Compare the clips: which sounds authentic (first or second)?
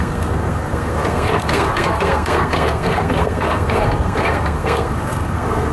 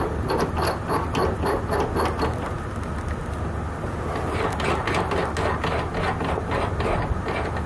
second